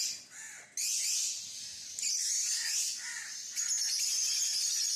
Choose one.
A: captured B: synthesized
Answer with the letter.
A